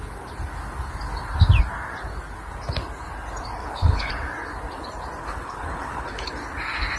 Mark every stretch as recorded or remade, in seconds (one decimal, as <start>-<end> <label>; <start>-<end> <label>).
0.0-3.6 recorded; 3.6-4.1 remade; 4.1-5.2 recorded; 5.2-6.3 remade; 6.3-7.0 recorded